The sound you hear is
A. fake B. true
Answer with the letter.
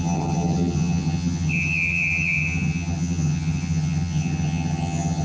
A